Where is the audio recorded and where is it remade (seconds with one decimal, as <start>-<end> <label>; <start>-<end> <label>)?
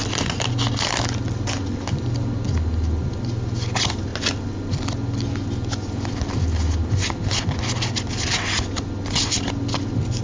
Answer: 0.0-10.2 recorded